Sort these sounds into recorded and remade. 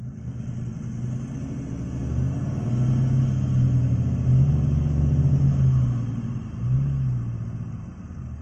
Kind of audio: recorded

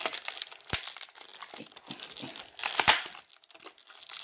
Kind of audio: recorded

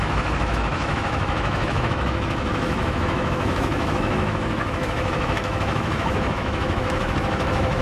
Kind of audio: remade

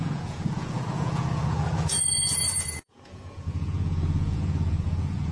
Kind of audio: remade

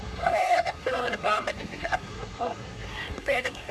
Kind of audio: remade